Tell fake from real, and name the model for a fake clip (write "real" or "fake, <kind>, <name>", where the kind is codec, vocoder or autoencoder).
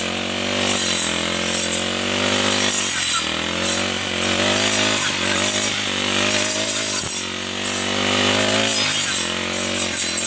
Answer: real